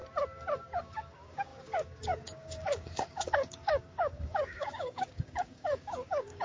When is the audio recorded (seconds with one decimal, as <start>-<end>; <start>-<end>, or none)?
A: 0.0-0.8